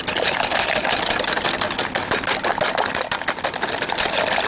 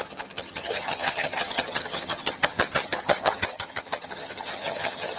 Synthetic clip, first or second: second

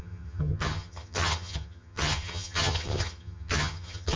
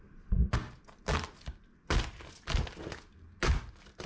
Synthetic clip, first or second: first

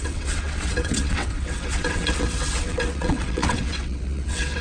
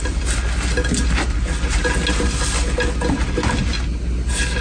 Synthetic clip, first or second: first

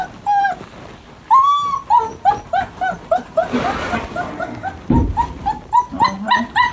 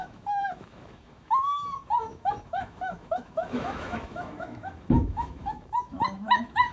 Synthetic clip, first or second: second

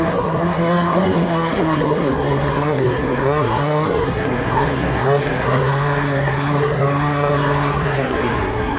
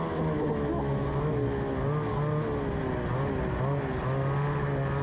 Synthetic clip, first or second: first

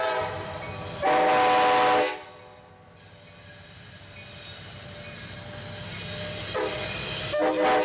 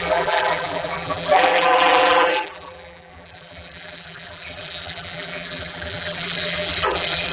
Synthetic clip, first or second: second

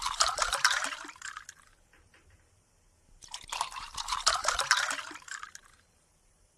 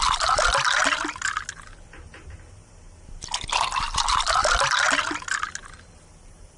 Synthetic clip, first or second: first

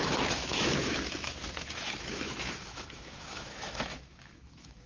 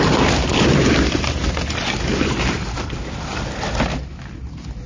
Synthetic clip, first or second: first